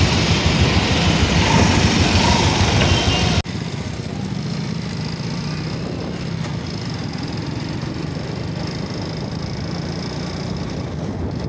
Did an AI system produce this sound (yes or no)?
no